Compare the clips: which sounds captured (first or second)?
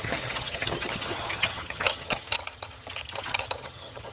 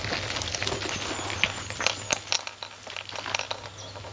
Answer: second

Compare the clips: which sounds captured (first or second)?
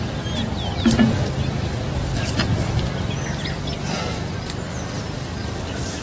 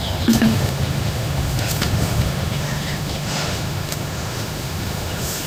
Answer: first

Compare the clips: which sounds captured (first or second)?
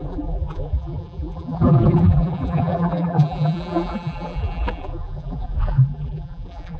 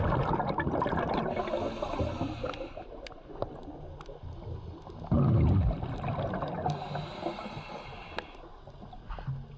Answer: second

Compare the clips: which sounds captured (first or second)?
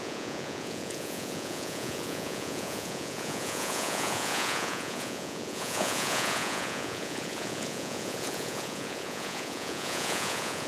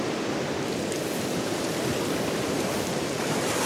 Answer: second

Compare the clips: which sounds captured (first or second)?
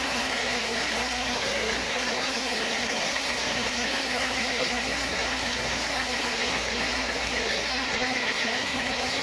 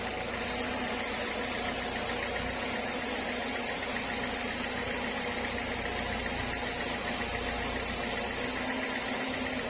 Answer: second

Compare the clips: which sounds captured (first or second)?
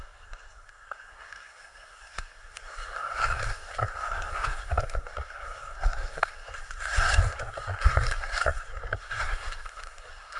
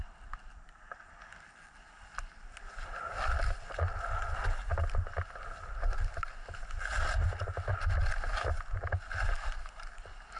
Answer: second